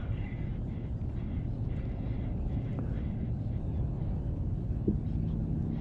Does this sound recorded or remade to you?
recorded